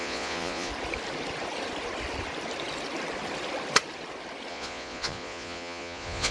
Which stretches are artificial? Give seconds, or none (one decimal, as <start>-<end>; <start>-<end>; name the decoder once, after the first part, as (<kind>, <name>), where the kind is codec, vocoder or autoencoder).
0.0-0.7 (vocoder, Vocos); 4.5-6.3